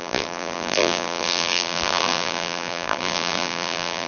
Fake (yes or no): yes